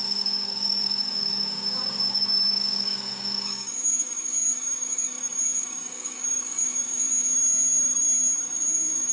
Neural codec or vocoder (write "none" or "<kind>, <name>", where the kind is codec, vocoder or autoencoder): codec, DAC